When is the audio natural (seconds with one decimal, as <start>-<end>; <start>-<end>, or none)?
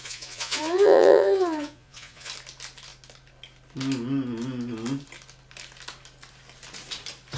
2.3-7.4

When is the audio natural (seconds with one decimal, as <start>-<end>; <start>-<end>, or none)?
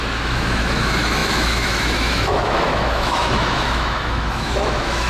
none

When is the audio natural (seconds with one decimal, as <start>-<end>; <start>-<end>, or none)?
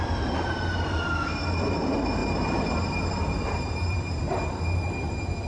0.0-2.2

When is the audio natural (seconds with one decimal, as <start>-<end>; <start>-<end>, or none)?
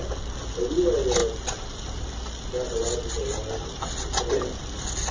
0.0-5.1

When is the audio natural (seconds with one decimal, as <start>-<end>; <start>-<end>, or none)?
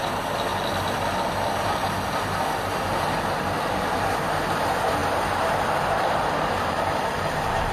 0.0-7.7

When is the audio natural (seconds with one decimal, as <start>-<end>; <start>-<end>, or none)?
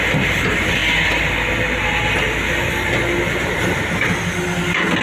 0.0-5.0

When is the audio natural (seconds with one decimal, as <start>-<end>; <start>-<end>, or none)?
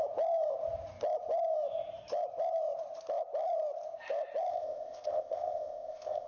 0.0-4.5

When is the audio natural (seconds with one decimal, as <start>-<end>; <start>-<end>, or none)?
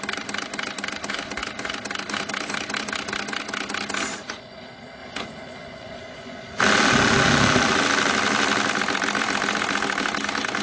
0.0-4.1; 4.6-5.0; 6.6-10.6